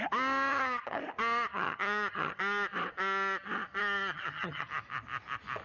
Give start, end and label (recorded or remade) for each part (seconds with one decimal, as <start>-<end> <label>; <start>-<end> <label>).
0.0-0.5 recorded; 0.5-1.0 remade; 1.0-1.5 recorded; 1.5-2.4 remade; 2.4-3.8 recorded; 3.8-4.7 remade; 4.7-5.6 recorded